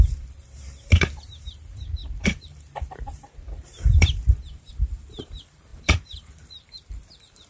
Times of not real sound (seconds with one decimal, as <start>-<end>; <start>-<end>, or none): 0.0-7.5